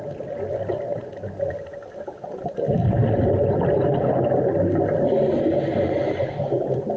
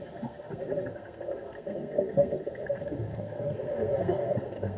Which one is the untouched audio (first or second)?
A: first